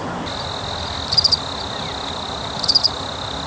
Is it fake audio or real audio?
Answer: real